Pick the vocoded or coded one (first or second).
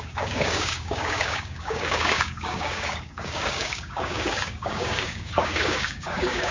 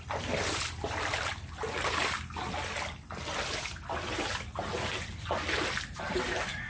first